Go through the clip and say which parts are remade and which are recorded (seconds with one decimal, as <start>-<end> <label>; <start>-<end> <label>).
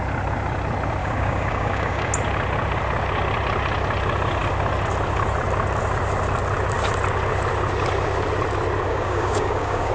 0.0-1.0 recorded; 1.0-2.1 remade; 2.1-8.9 recorded; 8.9-9.9 remade